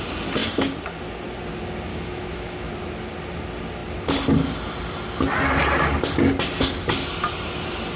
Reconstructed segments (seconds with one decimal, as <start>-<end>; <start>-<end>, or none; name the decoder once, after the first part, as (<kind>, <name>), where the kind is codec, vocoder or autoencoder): 1.9-2.7 (autoencoder, DAC-VAE)